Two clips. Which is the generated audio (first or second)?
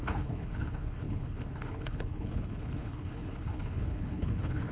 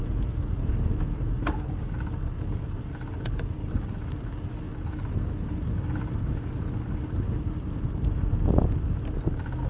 first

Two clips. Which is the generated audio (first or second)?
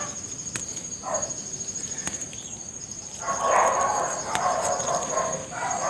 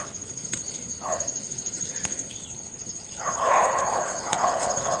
second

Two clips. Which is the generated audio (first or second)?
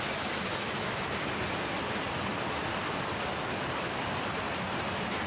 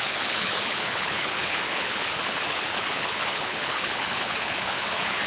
second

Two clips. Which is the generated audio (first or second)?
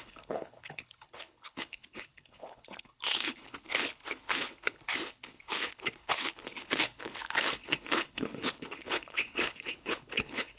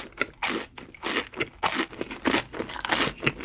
first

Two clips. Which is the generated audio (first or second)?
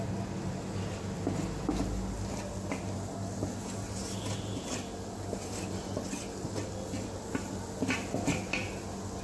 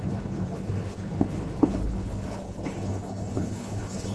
second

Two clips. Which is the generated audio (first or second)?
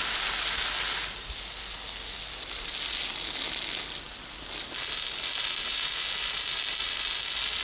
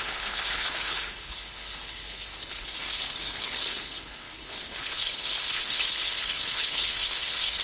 second